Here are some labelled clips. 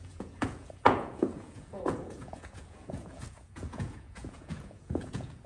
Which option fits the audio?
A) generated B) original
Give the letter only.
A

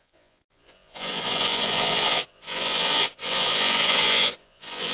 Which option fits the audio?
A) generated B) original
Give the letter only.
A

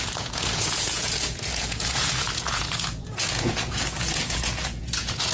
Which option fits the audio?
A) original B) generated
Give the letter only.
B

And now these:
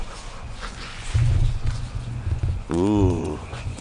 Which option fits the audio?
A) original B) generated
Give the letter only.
B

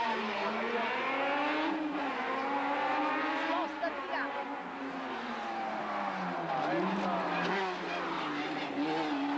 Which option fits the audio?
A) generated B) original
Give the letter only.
B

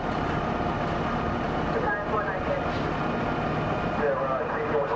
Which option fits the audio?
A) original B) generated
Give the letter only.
A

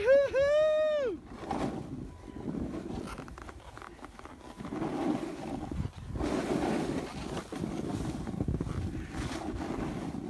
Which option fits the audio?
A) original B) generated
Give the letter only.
A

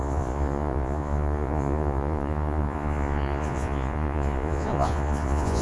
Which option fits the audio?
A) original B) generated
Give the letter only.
B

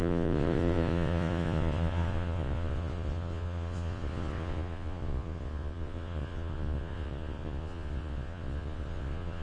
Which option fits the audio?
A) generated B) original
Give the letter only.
A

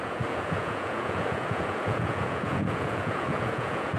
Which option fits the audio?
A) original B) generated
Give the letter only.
B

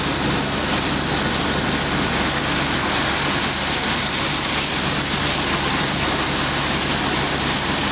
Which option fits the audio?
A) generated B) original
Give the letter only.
B